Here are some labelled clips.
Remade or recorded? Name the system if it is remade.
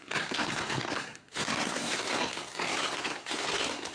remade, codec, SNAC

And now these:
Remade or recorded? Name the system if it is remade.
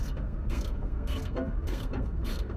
remade, codec, SNAC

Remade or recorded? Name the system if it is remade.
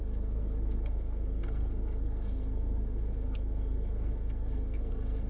remade, codec, SNAC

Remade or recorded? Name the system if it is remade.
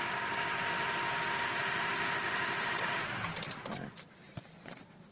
recorded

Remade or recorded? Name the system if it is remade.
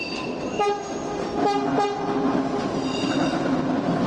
recorded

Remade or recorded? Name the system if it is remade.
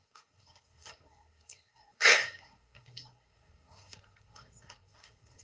remade, codec, SNAC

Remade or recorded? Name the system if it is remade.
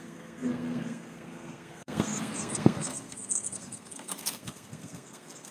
remade, codec, SNAC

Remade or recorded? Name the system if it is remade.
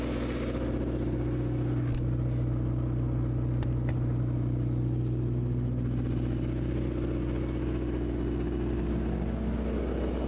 recorded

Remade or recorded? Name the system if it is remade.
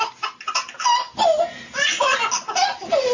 recorded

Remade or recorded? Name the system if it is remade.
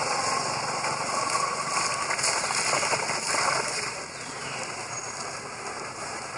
recorded